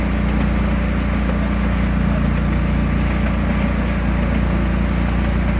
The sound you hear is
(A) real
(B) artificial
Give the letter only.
A